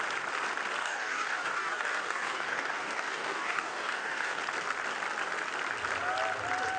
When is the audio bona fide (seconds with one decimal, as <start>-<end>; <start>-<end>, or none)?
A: 0.0-0.8; 4.4-6.8